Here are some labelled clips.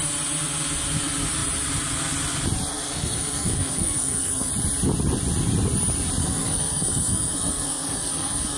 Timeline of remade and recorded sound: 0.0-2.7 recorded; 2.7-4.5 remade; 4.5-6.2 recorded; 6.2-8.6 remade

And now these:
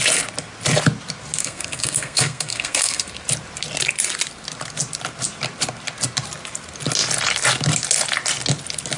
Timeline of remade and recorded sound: 0.0-1.4 recorded; 1.4-3.1 remade; 3.1-9.0 recorded

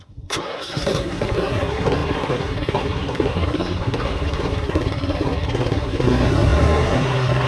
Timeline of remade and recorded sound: 0.0-7.5 remade

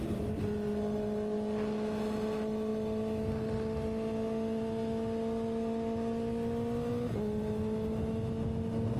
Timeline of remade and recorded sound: 0.0-9.0 recorded